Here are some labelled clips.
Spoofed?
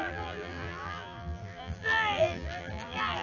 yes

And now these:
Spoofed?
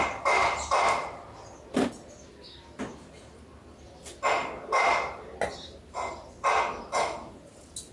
no